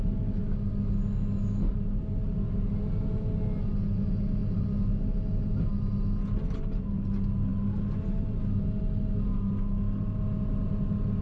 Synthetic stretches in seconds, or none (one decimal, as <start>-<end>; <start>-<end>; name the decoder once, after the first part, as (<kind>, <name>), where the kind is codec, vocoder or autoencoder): none